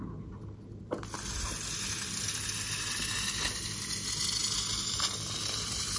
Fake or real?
real